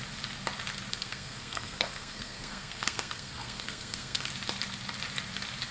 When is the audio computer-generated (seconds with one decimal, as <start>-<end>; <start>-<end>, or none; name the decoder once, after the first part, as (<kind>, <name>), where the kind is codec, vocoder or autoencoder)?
0.9-4.3 (codec, SNAC)